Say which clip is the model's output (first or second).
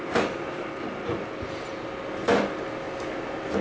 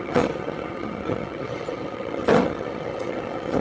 second